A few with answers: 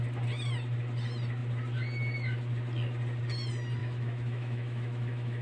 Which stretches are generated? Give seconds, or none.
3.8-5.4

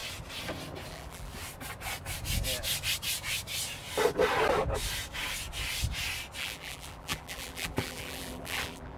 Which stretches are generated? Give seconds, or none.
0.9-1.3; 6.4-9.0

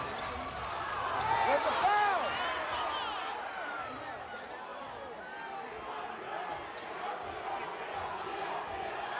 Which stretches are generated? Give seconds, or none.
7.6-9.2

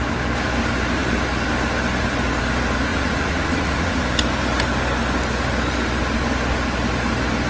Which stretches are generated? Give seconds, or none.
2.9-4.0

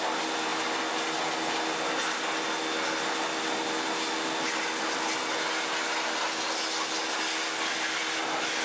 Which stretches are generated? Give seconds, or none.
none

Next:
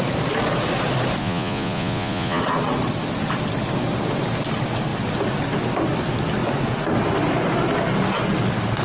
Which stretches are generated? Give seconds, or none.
1.2-2.4

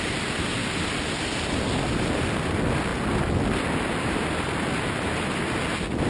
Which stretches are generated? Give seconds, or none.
none